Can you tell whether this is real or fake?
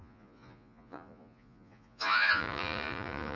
fake